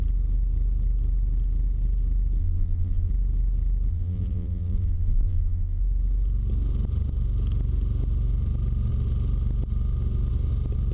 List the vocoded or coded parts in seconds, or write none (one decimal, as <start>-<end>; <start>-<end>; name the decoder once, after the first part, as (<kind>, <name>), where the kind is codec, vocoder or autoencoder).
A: 2.4-3.1 (vocoder, BigVGAN v2); 3.9-5.8